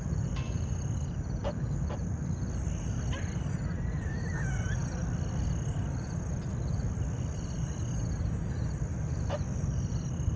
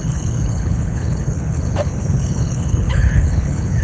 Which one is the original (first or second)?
first